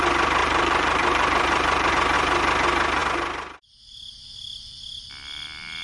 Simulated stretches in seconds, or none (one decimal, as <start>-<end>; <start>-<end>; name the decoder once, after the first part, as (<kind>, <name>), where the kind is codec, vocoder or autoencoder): 0.4-1.9 (vocoder, BigVGAN v2)